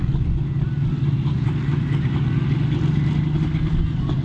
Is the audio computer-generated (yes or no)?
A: no